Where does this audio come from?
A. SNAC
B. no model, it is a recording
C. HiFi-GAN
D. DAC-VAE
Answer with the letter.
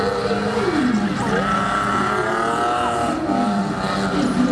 B